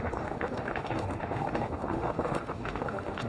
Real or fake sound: fake